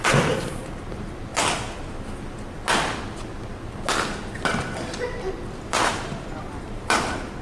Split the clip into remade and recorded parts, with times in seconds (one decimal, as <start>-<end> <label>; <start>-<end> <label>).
0.0-1.3 remade; 1.3-5.7 recorded; 5.7-7.4 remade